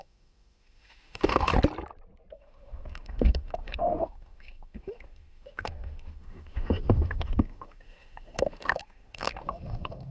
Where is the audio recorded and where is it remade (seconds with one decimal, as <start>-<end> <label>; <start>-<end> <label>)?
0.0-1.5 remade; 1.5-2.3 recorded; 2.3-10.1 remade